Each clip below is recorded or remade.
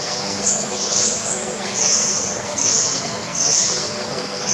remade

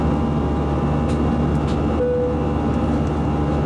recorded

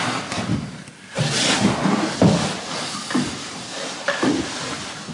recorded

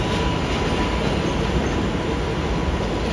recorded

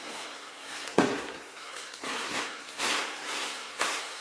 remade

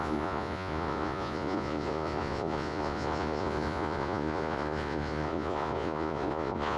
remade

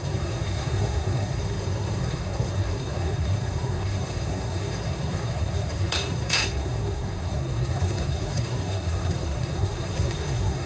remade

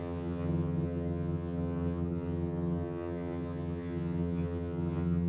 remade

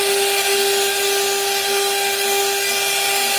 recorded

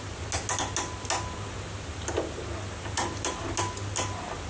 recorded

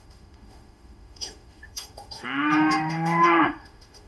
remade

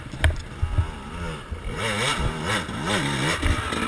recorded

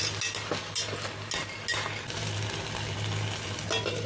recorded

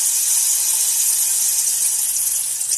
recorded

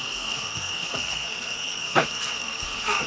remade